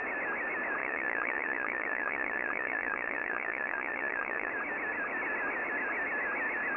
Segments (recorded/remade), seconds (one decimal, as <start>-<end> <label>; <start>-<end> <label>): 0.0-0.8 recorded; 0.8-4.5 remade; 4.5-6.8 recorded